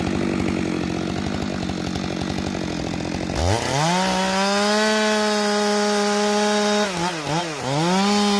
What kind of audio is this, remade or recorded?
recorded